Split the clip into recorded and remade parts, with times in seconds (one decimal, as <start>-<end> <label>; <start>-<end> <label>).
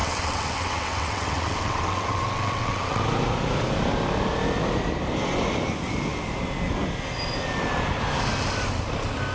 0.0-3.0 remade; 3.0-9.3 recorded